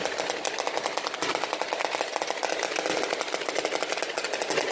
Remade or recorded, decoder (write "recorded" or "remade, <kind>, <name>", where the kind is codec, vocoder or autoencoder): recorded